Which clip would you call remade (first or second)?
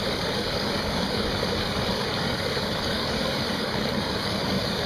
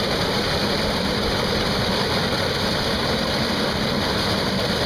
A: first